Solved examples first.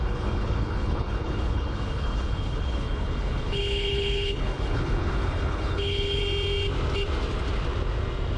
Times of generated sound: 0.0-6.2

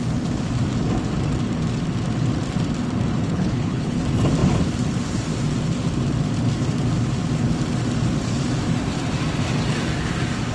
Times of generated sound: 3.2-4.0

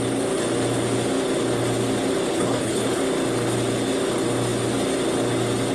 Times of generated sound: 2.3-3.0

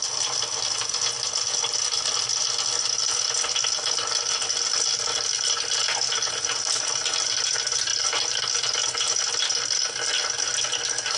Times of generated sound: none

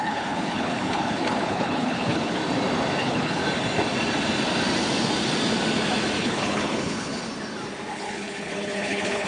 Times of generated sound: 0.0-2.4; 3.0-3.4; 6.2-7.2; 7.9-9.3

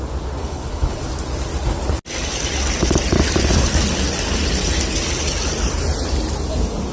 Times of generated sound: 0.4-1.0

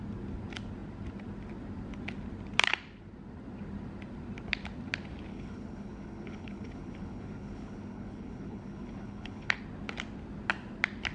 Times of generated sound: 5.3-9.6